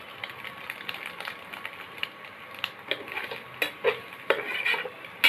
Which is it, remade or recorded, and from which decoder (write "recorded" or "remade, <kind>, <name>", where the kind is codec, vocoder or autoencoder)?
recorded